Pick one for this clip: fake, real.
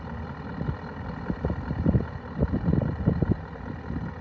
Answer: real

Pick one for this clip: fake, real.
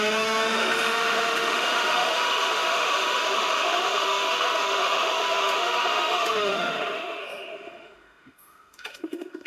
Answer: fake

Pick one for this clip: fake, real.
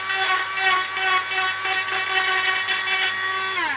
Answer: real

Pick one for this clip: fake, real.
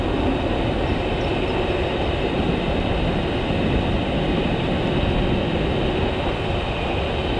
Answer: real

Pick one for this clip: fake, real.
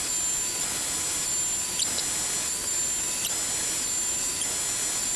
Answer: real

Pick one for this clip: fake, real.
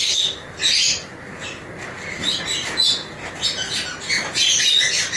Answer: real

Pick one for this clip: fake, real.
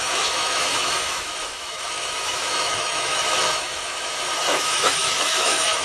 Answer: fake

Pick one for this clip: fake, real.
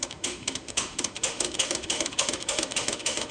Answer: fake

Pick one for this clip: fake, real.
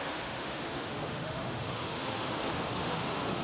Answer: fake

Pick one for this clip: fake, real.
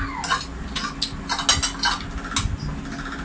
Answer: real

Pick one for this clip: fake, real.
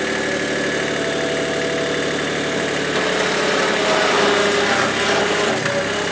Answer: real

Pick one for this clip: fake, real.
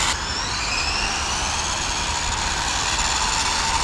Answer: real